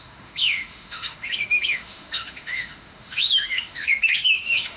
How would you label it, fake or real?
fake